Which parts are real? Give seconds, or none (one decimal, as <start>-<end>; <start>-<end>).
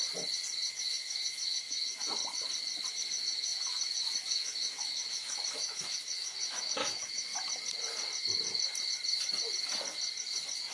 0.0-0.7; 2.2-2.9; 7.3-10.7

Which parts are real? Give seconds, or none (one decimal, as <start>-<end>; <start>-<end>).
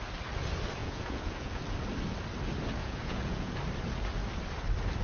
0.0-0.8; 1.6-2.8; 3.5-5.0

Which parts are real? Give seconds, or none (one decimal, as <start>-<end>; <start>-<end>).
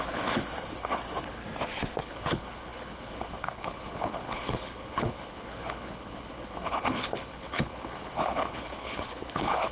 1.4-2.0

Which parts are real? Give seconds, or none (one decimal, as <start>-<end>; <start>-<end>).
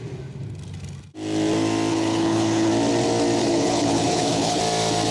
0.0-1.9; 2.7-3.4; 4.6-5.1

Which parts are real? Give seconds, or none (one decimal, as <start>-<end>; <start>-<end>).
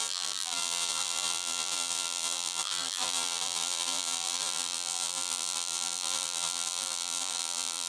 none